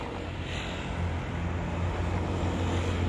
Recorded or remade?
recorded